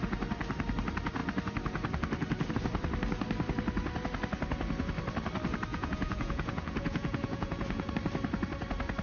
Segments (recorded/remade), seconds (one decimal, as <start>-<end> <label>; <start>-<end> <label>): 0.0-5.7 recorded; 5.7-7.9 remade; 7.9-9.0 recorded